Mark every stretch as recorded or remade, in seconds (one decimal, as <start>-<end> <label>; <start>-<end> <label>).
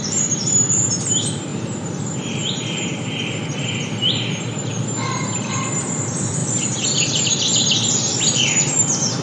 0.0-1.5 remade; 1.5-4.7 recorded; 4.7-9.2 remade